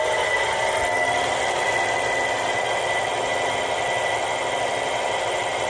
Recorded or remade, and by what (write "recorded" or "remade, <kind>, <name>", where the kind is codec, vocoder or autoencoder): recorded